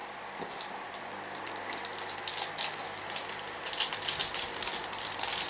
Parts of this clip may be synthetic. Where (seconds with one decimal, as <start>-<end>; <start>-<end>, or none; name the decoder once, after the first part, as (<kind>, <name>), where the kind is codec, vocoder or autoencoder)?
none